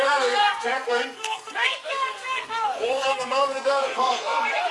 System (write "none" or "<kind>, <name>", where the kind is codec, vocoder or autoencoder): codec, SNAC